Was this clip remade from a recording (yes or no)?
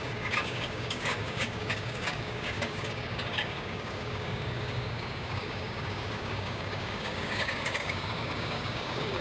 yes